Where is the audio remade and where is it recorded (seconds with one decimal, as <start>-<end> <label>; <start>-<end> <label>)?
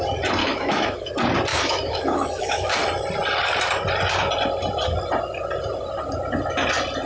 0.0-0.4 recorded; 0.4-1.1 remade; 1.1-1.5 recorded; 1.5-2.8 remade; 2.8-7.1 recorded